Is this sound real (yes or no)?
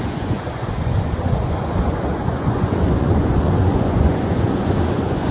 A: no